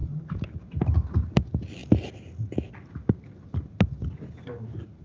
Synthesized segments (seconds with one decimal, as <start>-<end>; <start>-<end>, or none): none